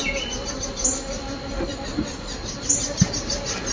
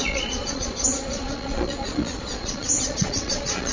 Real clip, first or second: first